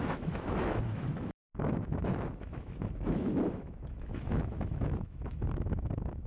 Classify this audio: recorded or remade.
remade